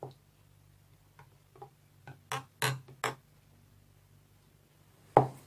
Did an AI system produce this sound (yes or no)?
no